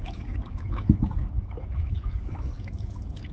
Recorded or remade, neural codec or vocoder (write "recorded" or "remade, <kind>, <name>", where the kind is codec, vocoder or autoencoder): remade, autoencoder, DAC-VAE